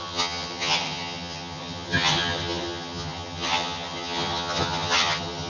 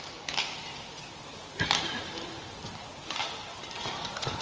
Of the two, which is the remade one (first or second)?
first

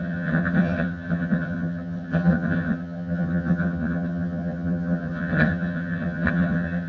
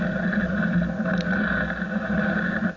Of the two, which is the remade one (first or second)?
first